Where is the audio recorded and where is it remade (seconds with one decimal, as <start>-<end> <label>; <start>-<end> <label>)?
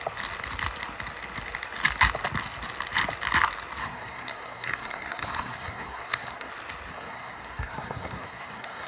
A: 0.0-3.8 recorded; 3.8-6.5 remade; 6.5-6.9 recorded; 6.9-8.9 remade